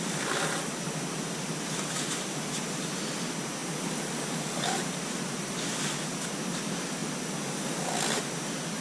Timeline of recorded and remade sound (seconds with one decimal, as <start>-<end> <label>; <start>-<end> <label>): 0.0-8.8 recorded